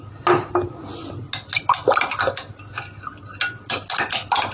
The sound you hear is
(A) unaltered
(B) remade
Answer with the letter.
A